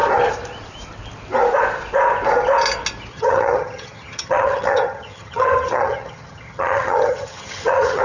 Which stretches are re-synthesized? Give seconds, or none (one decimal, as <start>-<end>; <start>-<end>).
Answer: 3.1-8.0